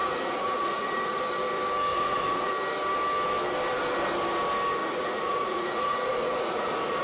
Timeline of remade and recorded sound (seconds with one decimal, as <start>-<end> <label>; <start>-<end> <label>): 0.0-1.2 remade; 1.2-1.9 recorded; 1.9-2.5 remade; 2.5-4.8 recorded; 4.8-7.0 remade